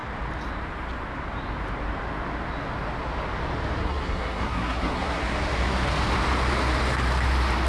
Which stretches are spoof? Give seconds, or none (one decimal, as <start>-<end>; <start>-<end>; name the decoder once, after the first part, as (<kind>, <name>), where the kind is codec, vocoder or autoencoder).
3.8-5.2 (codec, SNAC)